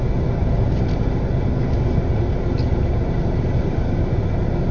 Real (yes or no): yes